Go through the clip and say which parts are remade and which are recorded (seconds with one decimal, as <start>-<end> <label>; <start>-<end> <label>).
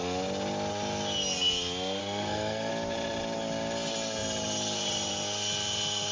0.0-2.0 recorded; 2.0-2.7 remade; 2.7-6.1 recorded